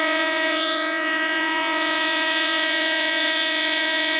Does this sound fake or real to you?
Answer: fake